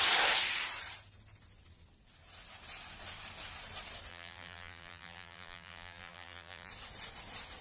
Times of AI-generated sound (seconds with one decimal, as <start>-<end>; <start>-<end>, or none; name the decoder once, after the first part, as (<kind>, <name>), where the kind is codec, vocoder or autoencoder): 4.1-6.7 (vocoder, BigVGAN v2)